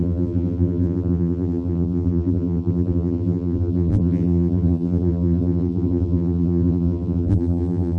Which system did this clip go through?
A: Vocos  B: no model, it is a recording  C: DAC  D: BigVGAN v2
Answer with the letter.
D